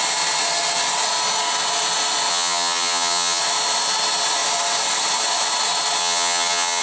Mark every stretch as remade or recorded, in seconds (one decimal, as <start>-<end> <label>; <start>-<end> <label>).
0.0-2.3 recorded; 2.3-3.4 remade; 3.4-6.0 recorded; 6.0-6.8 remade